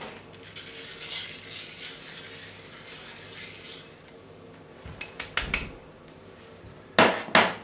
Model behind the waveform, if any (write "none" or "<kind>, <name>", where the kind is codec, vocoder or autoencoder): none